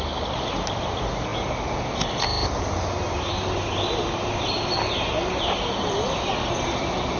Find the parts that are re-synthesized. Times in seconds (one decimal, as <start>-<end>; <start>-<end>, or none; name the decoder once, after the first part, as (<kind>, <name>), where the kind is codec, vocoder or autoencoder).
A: none